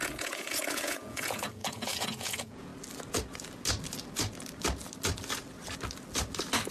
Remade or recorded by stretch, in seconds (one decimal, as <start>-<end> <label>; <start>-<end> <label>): 0.0-2.7 remade; 2.7-6.7 recorded

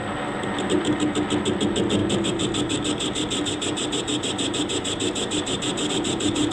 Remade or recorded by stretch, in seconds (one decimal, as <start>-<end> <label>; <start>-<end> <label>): 0.0-6.5 recorded

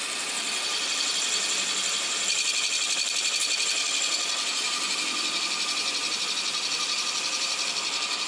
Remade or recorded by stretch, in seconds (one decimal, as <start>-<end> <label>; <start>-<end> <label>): 0.0-8.3 recorded

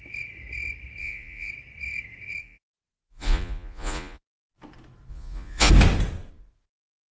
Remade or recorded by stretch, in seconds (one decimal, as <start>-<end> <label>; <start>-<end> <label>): 0.0-1.0 recorded; 1.0-1.5 remade; 1.5-2.4 recorded; 2.4-4.3 remade; 4.3-5.1 recorded; 5.1-5.7 remade; 5.7-7.1 recorded

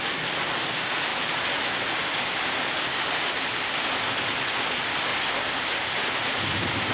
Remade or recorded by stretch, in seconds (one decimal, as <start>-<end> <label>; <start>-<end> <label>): 0.0-6.9 recorded

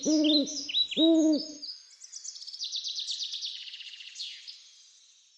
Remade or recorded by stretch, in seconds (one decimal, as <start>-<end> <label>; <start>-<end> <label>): 0.0-3.5 recorded; 3.5-4.2 remade; 4.2-5.4 recorded